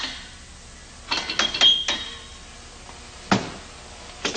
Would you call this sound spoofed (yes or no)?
no